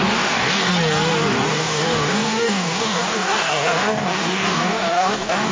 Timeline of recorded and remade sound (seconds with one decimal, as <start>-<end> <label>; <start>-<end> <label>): 0.0-0.7 remade; 0.7-1.5 recorded; 1.5-5.5 remade